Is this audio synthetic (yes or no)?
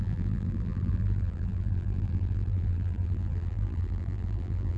yes